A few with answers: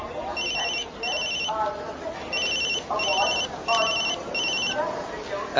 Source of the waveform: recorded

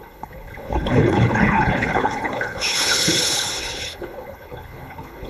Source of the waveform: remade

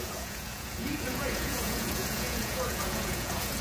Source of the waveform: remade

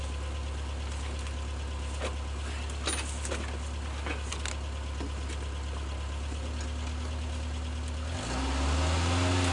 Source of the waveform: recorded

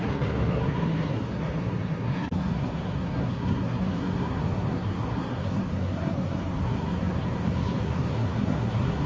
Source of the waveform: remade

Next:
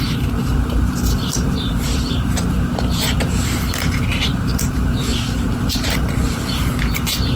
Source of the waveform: remade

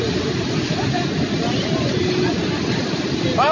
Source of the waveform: recorded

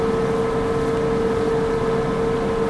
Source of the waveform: recorded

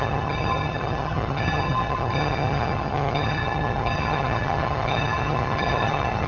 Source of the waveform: remade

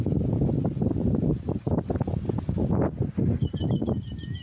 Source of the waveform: recorded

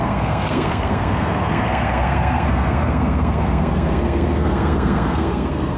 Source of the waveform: remade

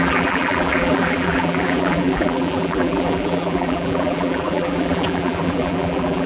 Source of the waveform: remade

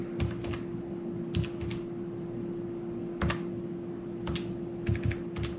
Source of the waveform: recorded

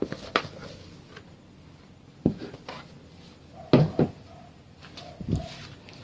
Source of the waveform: recorded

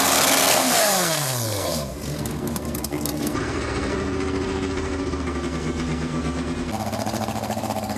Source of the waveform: remade